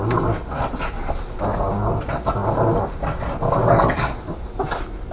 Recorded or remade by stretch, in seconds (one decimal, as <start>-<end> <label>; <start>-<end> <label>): 0.0-5.1 recorded